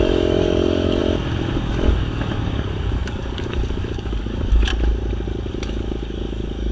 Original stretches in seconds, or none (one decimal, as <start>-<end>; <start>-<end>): 1.0-1.5; 4.7-5.5